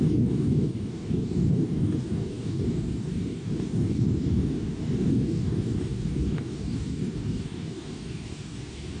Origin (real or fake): fake